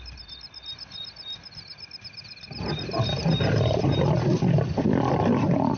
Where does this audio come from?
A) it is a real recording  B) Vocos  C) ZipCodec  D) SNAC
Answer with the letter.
A